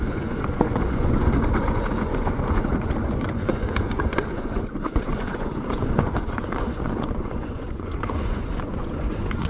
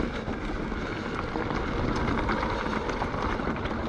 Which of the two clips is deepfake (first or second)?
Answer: first